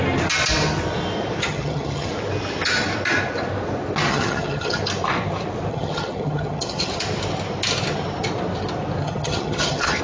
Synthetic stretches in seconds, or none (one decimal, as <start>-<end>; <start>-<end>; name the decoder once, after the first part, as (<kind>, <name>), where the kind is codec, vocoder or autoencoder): 1.4-2.1 (vocoder, HiFi-GAN); 4.1-4.8; 5.7-6.9; 9.0-10.0